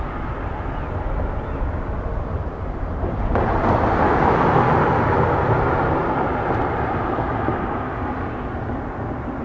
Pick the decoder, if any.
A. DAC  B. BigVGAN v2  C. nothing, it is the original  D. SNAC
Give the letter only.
C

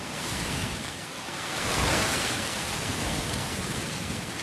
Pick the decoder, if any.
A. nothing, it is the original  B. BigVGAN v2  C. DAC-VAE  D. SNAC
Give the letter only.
D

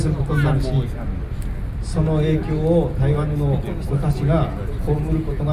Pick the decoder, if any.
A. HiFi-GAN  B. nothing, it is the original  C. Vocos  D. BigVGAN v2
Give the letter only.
B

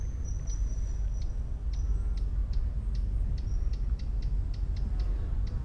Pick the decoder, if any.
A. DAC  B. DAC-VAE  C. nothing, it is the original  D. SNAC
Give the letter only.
C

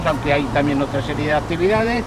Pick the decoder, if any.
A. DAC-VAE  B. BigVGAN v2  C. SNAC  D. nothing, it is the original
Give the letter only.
B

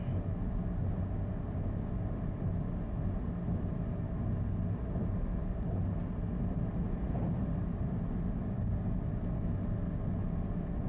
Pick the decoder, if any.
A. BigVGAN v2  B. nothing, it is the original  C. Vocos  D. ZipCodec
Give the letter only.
B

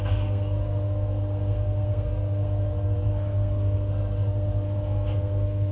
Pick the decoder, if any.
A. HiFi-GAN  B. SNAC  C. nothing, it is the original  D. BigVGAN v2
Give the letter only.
B